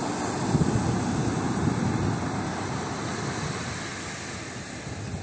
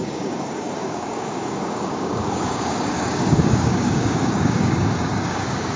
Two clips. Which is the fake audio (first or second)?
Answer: second